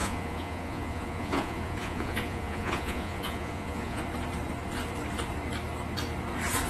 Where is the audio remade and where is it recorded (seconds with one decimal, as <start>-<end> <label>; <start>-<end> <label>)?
0.0-4.0 remade; 4.0-6.7 recorded